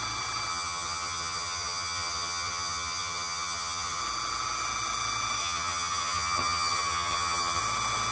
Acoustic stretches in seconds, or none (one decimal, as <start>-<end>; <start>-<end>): 0.0-0.5; 4.0-5.4; 7.6-8.1